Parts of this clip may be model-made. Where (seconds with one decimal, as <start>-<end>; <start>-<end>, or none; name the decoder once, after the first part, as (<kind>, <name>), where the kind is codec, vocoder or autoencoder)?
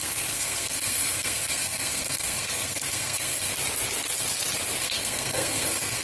0.0-3.5 (codec, SNAC); 4.8-6.0